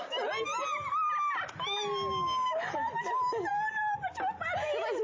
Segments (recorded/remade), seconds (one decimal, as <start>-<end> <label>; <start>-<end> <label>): 0.0-5.0 recorded